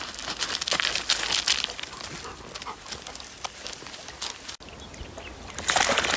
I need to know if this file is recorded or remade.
recorded